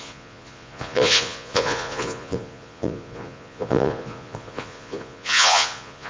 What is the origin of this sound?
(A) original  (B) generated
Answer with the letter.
B